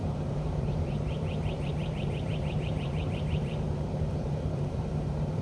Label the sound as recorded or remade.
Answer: remade